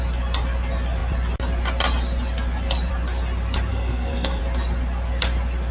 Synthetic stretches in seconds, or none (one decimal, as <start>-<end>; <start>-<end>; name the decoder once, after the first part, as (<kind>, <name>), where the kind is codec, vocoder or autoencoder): 3.7-4.4 (codec, SNAC)